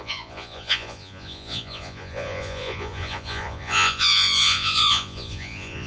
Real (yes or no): no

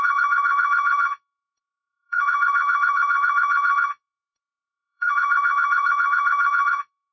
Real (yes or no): no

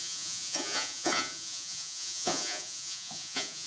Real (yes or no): no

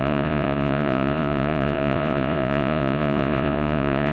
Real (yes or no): no